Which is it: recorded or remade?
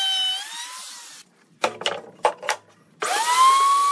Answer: recorded